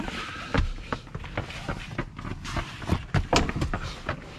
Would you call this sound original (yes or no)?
yes